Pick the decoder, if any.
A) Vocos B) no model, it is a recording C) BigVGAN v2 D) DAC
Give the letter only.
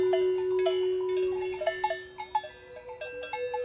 B